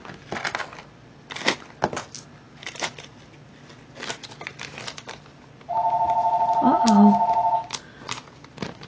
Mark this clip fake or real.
real